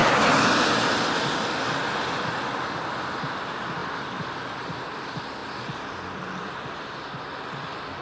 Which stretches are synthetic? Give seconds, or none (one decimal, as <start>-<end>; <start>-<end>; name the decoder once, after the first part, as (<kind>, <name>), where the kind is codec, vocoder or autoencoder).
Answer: 3.4-5.4 (vocoder, BigVGAN v2); 6.4-8.0